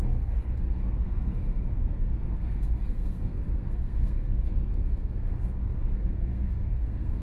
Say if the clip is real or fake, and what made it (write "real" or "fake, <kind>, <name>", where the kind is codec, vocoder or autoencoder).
fake, codec, SNAC